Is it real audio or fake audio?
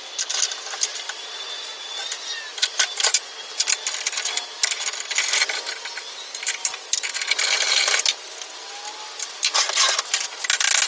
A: real